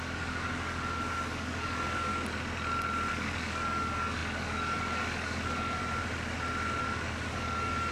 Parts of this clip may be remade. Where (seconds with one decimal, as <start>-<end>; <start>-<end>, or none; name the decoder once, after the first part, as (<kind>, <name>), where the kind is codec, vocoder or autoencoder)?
0.0-2.1 (codec, DAC); 3.1-5.8; 6.8-7.9